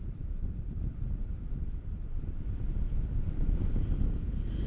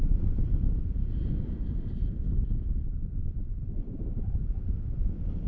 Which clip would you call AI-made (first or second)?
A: second